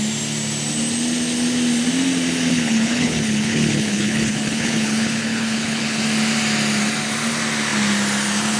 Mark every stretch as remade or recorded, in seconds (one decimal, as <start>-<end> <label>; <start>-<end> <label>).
0.0-2.5 recorded; 2.5-6.0 remade; 6.0-8.6 recorded